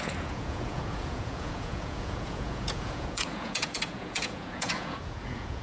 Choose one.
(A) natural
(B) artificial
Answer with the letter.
B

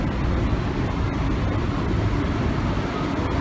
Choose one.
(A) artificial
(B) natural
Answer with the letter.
B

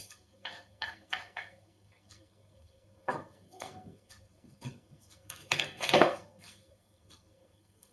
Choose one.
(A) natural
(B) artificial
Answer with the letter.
B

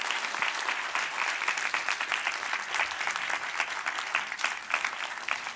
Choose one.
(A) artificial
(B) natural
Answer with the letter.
B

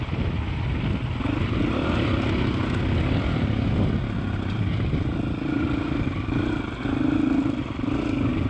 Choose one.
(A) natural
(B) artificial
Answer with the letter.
A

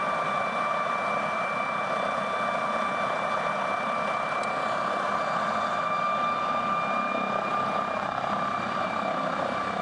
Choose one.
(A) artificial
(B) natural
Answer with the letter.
B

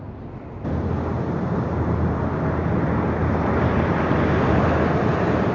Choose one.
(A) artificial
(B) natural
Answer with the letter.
B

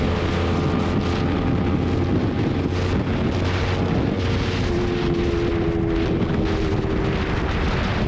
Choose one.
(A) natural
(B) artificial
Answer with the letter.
A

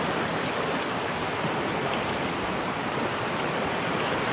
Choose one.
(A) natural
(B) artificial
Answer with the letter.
A